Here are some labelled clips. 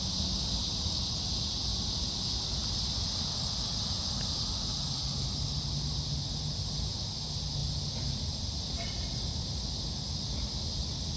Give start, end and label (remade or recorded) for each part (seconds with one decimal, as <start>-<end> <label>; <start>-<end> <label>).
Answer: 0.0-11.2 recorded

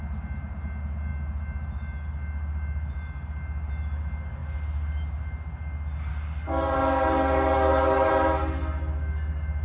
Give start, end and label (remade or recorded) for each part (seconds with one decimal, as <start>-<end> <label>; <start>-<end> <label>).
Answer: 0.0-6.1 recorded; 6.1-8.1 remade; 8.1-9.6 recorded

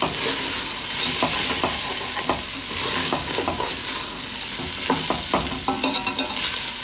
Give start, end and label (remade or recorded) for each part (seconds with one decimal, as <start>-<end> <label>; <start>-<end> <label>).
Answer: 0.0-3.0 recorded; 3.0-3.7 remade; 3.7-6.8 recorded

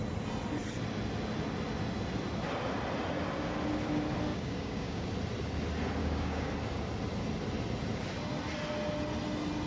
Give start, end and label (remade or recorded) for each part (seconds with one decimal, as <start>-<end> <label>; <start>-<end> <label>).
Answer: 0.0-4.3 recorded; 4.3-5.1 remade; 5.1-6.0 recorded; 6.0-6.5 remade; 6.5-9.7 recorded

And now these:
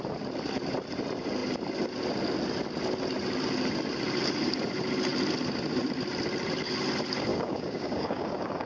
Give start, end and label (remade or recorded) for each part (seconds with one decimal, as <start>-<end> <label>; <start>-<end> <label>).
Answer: 0.0-7.3 recorded; 7.3-8.7 remade

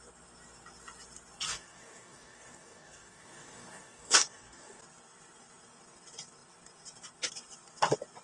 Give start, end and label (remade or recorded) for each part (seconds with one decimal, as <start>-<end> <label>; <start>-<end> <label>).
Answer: 0.0-1.5 recorded; 1.5-4.8 remade; 4.8-8.2 recorded

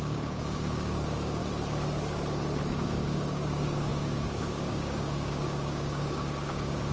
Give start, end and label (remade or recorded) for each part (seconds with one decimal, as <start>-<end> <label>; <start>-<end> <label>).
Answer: 0.0-1.4 remade; 1.4-2.7 recorded; 2.7-6.9 remade